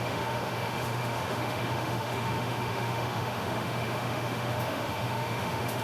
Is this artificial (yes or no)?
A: yes